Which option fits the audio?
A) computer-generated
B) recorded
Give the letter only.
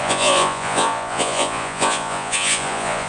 A